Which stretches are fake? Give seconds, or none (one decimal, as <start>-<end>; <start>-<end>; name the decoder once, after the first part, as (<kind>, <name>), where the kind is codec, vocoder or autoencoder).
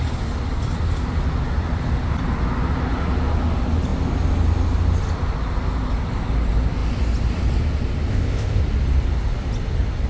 8.1-8.6 (codec, ZipCodec)